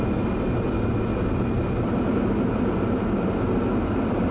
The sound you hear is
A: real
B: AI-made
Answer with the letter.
A